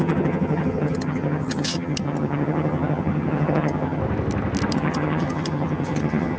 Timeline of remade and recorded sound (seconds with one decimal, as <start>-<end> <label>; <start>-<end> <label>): 0.0-4.0 remade; 4.0-4.7 recorded; 4.7-6.4 remade